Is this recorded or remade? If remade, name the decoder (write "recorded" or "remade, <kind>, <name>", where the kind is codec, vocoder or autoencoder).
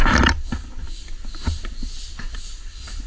recorded